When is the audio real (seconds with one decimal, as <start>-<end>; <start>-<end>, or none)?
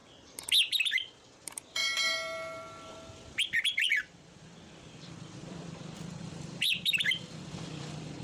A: 0.0-0.7